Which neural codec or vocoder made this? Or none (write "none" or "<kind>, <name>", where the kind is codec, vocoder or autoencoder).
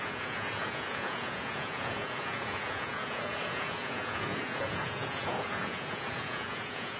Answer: vocoder, Vocos